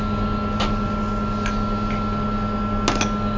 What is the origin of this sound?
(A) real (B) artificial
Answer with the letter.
A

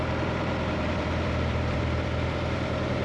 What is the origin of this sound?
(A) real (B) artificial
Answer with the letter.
B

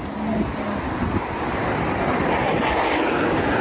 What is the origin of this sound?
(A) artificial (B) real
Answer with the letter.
B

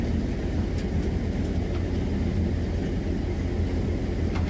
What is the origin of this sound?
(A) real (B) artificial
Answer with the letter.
A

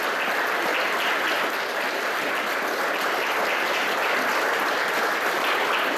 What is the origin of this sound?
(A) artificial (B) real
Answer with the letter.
B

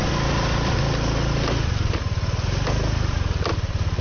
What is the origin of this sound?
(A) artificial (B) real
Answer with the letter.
B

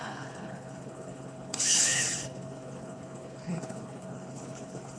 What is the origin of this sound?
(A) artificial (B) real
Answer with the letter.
A